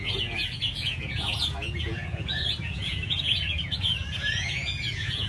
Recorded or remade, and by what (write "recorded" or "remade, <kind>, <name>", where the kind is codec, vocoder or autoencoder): remade, vocoder, Vocos